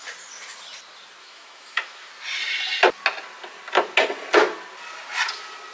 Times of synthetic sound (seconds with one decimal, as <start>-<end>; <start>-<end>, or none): 1.2-2.1